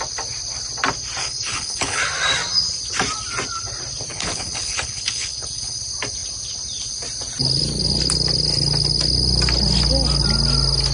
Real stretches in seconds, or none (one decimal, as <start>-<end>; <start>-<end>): 0.0-1.2; 2.0-4.1; 5.8-10.9